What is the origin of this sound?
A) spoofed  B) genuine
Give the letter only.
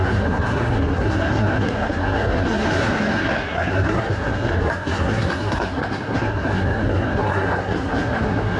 A